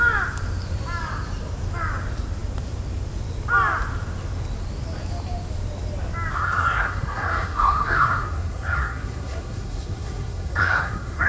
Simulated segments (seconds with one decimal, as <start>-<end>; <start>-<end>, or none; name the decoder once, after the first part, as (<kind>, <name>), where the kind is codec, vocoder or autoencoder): 6.3-11.3 (codec, SNAC)